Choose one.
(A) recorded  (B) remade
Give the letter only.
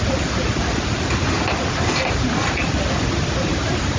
A